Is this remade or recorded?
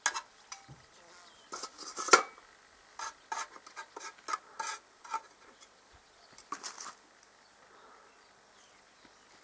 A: recorded